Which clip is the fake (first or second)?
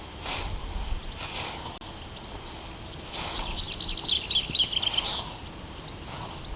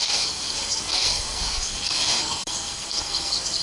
second